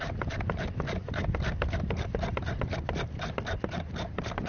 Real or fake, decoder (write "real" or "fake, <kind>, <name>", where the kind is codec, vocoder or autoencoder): real